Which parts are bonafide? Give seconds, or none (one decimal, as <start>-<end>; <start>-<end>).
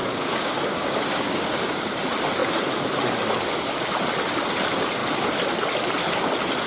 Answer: 1.9-6.7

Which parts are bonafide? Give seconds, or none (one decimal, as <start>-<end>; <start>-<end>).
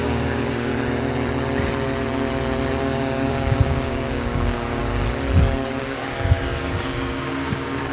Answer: 0.7-2.8; 4.8-5.8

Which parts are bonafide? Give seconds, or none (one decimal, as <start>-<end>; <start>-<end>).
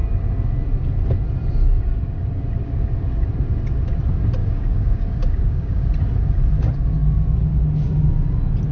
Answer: 0.0-4.4; 5.9-8.7